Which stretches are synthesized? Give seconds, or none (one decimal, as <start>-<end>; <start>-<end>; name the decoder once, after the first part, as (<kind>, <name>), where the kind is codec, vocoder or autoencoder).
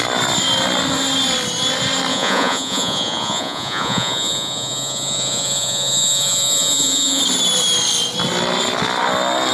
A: 2.1-7.2 (vocoder, Vocos)